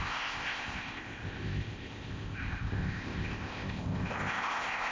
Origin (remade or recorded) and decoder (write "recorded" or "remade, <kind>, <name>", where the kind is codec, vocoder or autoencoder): remade, codec, ZipCodec